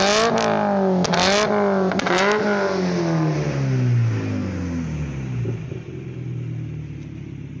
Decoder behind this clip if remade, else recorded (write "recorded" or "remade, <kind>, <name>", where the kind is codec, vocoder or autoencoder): recorded